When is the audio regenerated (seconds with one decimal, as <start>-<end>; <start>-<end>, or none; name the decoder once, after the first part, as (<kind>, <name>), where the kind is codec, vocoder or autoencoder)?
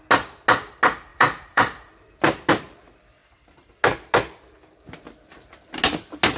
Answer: 1.1-2.5 (vocoder, BigVGAN v2)